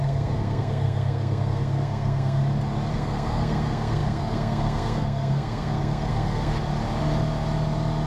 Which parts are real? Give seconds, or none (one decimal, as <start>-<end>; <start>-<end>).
2.4-2.9; 6.5-8.1